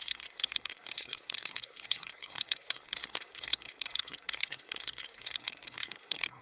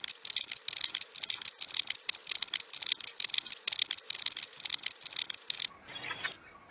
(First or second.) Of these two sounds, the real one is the second